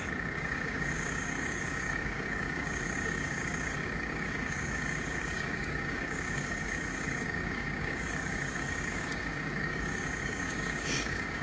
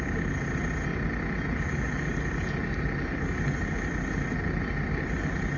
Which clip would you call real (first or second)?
second